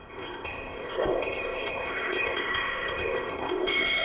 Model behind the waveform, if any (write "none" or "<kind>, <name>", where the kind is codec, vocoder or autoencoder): codec, ZipCodec